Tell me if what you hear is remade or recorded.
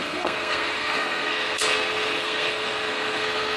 remade